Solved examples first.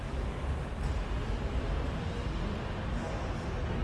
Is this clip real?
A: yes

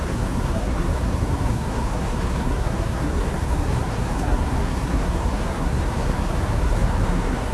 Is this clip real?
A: no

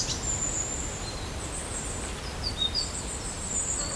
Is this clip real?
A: yes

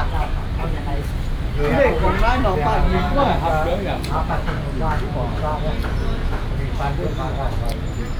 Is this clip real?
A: yes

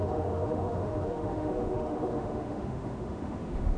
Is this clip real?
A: no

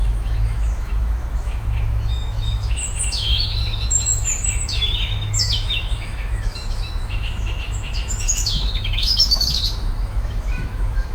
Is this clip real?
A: no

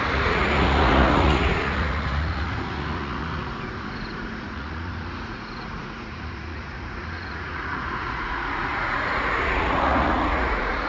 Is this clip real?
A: no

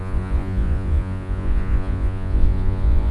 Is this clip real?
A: no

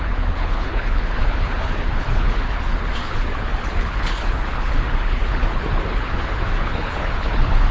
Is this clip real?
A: no